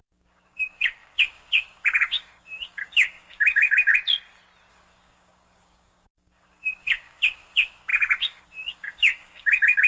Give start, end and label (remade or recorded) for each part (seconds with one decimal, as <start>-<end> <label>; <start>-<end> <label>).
0.0-3.9 remade; 3.9-4.7 recorded; 4.7-9.9 remade